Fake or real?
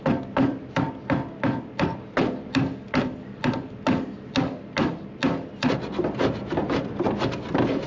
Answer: real